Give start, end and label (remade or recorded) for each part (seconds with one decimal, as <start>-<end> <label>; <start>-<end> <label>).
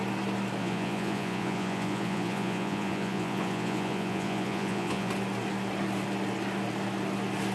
0.0-0.6 recorded; 0.6-5.1 remade; 5.1-7.5 recorded